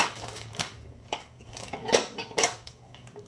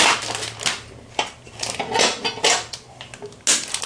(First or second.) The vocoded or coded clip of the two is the first